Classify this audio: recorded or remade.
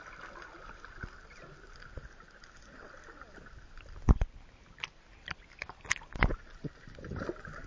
recorded